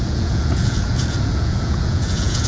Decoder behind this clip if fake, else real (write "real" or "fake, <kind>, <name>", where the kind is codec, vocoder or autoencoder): fake, vocoder, Vocos